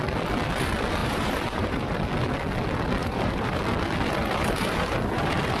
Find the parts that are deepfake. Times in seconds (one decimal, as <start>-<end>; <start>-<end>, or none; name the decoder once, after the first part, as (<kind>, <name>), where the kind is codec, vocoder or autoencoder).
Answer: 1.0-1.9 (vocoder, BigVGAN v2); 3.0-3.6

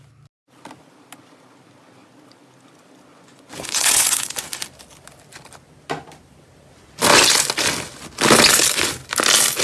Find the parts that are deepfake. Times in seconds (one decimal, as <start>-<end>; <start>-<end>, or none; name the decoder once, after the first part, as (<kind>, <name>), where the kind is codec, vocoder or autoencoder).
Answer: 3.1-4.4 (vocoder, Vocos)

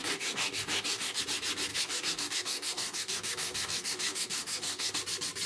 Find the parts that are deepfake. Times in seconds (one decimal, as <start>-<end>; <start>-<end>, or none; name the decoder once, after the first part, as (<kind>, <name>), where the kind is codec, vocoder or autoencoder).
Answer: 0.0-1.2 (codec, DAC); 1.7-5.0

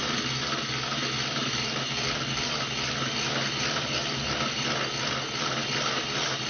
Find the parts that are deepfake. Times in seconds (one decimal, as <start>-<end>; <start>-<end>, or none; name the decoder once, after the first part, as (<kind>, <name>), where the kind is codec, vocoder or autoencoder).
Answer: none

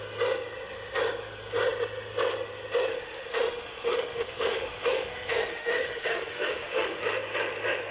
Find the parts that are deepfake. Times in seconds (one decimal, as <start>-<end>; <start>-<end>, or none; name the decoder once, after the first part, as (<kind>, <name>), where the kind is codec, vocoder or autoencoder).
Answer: 2.9-7.0 (autoencoder, DAC-VAE)

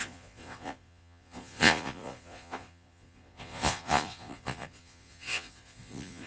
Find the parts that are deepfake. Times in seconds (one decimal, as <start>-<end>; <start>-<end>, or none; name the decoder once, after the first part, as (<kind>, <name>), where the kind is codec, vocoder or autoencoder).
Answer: 0.0-6.3 (vocoder, Vocos)

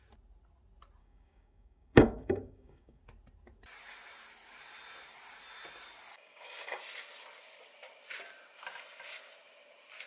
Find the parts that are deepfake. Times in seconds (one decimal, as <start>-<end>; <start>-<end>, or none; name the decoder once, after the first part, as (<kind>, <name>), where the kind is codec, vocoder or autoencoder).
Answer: 1.0-3.0 (codec, DAC); 6.1-6.8

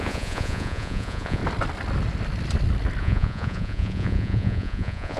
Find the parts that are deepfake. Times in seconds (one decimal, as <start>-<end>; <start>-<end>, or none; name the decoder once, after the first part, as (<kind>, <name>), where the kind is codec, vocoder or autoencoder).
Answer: 0.0-1.4 (vocoder, Vocos); 3.0-5.2